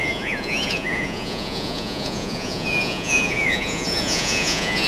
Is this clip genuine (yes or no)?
no